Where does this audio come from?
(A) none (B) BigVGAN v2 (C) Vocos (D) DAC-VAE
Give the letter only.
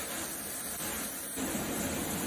A